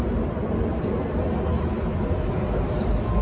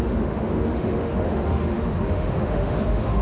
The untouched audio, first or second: first